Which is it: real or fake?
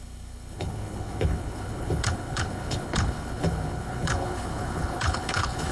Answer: fake